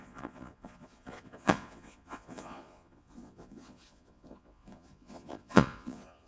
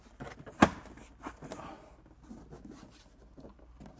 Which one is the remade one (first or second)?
first